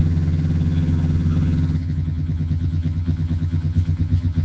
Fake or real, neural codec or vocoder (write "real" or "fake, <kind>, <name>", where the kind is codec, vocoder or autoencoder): fake, vocoder, HiFi-GAN